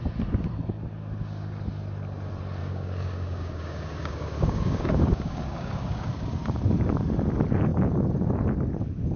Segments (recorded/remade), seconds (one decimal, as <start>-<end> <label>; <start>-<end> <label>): 0.0-2.6 recorded; 2.6-6.1 remade; 6.1-9.2 recorded

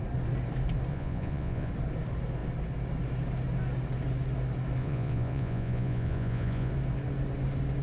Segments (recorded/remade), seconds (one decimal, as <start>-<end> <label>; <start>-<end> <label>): 0.0-0.9 recorded; 0.9-1.7 remade; 1.7-4.8 recorded; 4.8-6.7 remade; 6.7-7.8 recorded

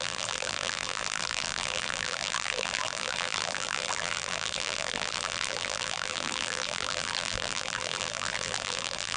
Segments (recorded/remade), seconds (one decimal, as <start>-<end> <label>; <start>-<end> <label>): 0.0-9.2 remade